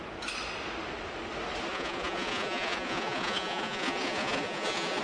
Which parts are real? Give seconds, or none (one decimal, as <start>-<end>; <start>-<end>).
0.0-1.7